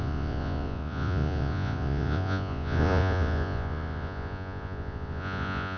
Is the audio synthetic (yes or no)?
yes